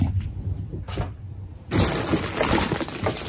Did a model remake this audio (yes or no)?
no